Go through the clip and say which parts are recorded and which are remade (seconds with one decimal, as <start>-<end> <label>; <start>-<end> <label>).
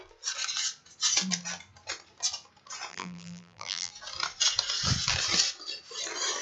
0.0-2.9 recorded; 2.9-3.9 remade; 3.9-6.4 recorded